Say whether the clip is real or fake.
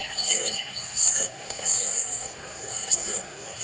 fake